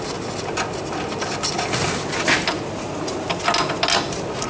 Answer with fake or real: real